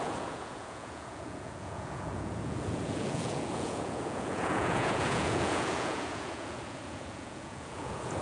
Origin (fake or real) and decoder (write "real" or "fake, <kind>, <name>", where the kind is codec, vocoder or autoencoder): fake, vocoder, Vocos